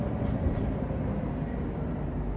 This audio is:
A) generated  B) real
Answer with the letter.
B